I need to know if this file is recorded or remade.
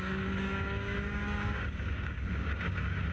remade